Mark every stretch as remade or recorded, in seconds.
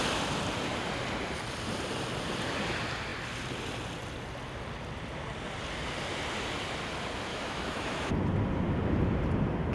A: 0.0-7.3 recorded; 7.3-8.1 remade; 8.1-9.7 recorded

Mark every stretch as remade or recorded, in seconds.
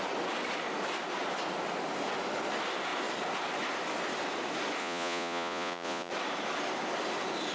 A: 0.0-4.8 recorded; 4.8-6.1 remade; 6.1-7.5 recorded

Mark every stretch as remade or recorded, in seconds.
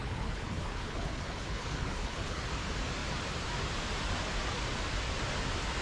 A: 0.0-2.4 remade; 2.4-5.8 recorded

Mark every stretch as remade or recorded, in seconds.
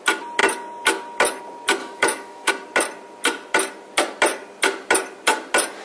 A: 0.0-1.8 recorded; 1.8-2.5 remade; 2.5-5.8 recorded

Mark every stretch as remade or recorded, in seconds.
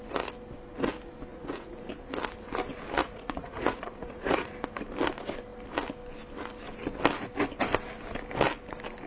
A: 0.0-1.3 recorded; 1.3-1.9 remade; 1.9-3.0 recorded; 3.0-4.5 remade; 4.5-9.1 recorded